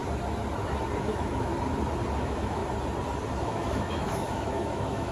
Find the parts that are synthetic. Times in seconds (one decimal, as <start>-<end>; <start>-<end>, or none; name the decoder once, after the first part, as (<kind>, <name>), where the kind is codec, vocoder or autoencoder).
1.0-1.5 (autoencoder, DAC-VAE); 2.2-2.6; 3.4-5.1